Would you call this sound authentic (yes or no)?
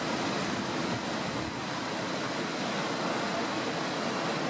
yes